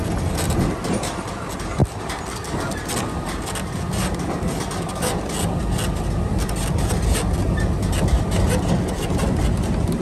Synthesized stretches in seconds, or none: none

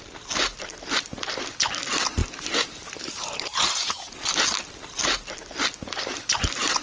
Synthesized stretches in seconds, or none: 2.2-3.9; 5.8-6.8